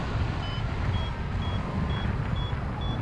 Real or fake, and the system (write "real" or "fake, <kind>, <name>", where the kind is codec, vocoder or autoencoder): real